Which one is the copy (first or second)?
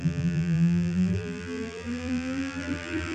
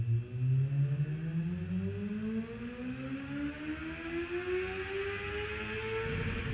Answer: first